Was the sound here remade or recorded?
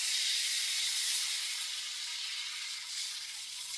remade